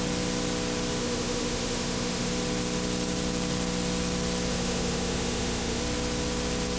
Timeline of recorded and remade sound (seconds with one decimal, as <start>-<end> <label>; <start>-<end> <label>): 0.0-1.0 recorded; 1.0-2.3 remade; 2.3-4.5 recorded; 4.5-5.8 remade; 5.8-6.8 recorded